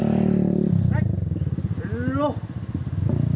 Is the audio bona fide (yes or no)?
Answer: yes